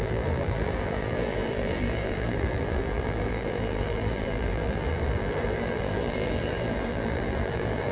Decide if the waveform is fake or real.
fake